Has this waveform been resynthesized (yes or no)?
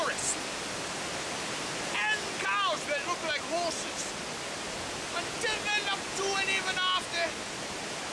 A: no